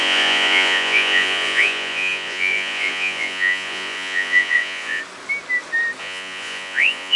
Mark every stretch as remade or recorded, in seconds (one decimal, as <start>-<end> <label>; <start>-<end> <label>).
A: 0.0-5.0 remade; 5.0-6.0 recorded; 6.0-7.2 remade